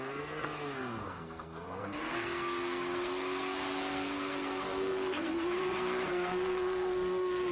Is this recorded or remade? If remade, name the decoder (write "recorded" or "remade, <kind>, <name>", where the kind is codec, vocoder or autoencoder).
remade, codec, SNAC